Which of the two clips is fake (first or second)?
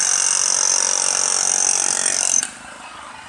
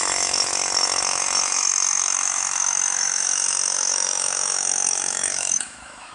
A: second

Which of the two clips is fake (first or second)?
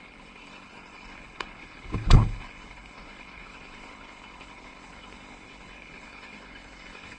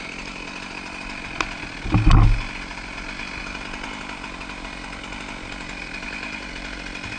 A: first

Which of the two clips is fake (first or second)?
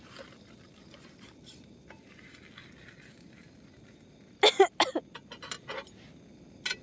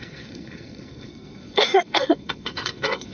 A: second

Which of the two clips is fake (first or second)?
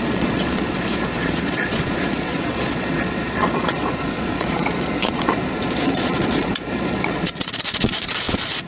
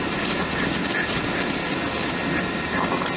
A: first